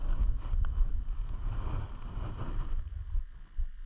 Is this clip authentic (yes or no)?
yes